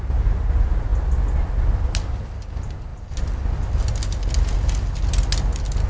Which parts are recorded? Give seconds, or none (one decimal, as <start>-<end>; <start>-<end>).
0.0-5.9